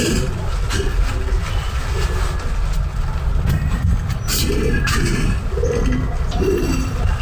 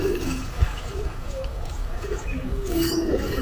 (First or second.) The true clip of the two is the first